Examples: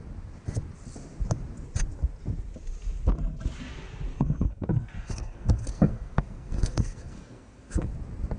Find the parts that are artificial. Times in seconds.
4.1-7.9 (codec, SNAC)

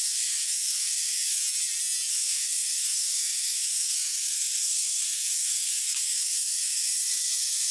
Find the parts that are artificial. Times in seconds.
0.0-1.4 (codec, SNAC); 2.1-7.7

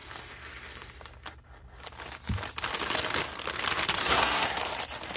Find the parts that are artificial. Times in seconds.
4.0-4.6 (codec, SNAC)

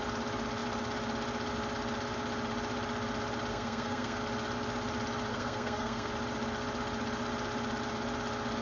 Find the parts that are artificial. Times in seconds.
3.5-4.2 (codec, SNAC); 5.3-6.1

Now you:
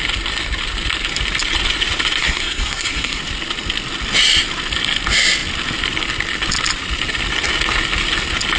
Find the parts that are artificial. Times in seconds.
2.2-3.2 (codec, SNAC)

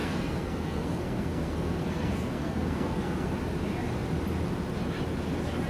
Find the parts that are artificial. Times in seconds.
0.0-3.4 (codec, SNAC)